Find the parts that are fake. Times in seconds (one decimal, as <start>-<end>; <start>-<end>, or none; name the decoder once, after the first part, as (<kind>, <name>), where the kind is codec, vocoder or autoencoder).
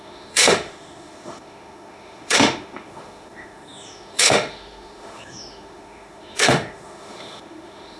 0.0-8.0 (autoencoder, DAC-VAE)